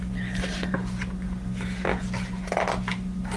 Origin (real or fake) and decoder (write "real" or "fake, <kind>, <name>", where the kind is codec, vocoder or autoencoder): real